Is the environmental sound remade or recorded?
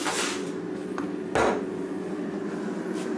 recorded